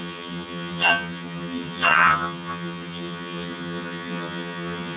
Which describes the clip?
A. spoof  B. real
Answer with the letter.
A